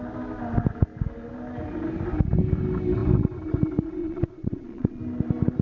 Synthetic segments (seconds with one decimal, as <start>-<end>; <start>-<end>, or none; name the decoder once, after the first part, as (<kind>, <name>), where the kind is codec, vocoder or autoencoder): 4.0-5.0 (vocoder, Vocos)